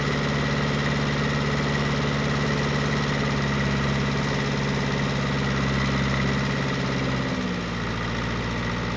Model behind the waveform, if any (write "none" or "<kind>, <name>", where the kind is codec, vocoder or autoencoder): none